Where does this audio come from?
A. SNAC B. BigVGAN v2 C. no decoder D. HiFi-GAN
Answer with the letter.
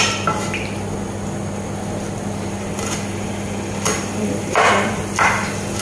C